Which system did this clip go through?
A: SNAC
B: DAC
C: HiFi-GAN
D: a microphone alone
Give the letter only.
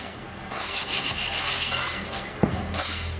A